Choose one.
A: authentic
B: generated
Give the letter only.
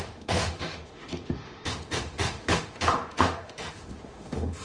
B